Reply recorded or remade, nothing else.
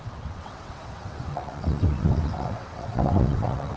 remade